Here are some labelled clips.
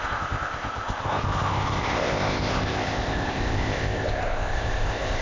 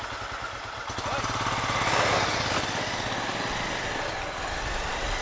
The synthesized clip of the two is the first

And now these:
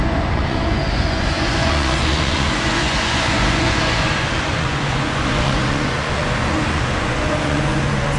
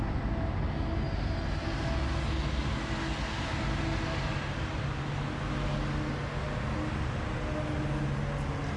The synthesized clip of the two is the first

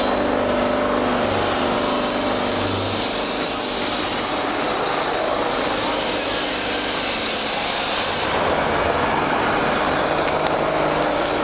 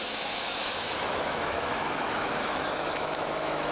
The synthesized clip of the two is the second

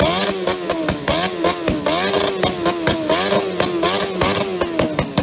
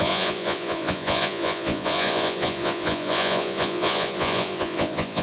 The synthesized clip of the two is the second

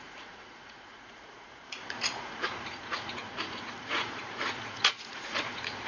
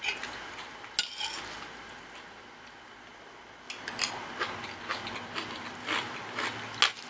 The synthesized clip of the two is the first